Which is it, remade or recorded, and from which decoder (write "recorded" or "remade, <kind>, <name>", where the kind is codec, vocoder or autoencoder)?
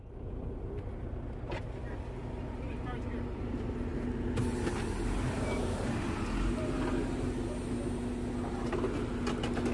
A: recorded